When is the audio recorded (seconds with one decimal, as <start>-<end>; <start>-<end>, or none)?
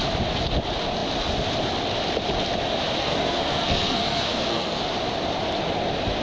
0.0-3.0; 4.8-6.2